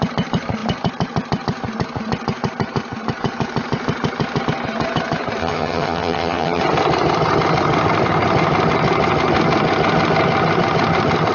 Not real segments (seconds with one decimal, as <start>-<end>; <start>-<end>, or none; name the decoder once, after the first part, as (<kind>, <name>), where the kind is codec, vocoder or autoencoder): 5.4-6.6 (vocoder, HiFi-GAN)